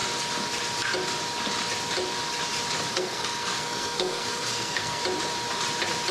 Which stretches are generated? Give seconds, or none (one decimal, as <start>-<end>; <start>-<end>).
2.9-5.0